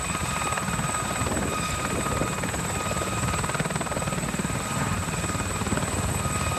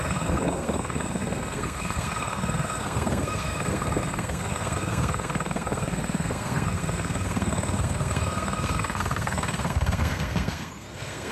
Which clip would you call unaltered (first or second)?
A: first